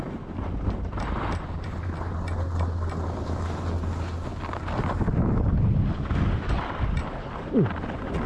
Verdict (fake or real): real